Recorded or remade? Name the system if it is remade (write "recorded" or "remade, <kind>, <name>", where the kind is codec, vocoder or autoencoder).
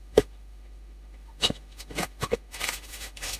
remade, autoencoder, DAC-VAE